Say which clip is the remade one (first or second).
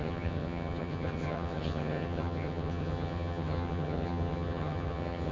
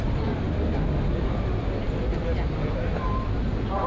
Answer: first